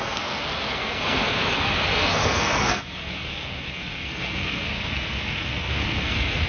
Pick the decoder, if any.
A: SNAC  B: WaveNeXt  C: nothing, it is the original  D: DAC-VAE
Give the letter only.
A